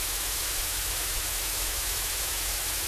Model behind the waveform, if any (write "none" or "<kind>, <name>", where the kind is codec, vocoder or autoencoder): autoencoder, DAC-VAE